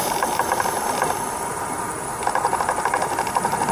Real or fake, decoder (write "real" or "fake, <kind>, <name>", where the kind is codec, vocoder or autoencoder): real